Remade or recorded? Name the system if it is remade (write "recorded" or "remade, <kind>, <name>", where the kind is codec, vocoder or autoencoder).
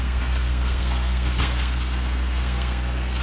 remade, codec, SNAC